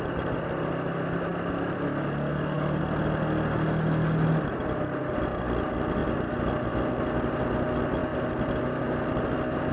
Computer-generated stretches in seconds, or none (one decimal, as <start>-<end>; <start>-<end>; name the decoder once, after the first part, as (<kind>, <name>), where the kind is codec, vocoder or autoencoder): 2.3-2.8 (codec, DAC)